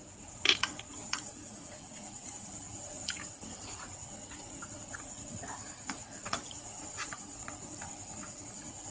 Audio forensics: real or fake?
fake